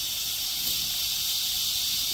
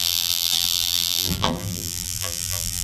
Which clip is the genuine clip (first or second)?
first